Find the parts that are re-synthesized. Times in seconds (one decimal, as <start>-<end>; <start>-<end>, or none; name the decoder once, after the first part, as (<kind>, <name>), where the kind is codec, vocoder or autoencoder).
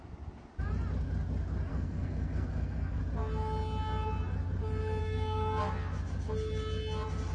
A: 1.7-3.0 (codec, SNAC); 5.0-5.6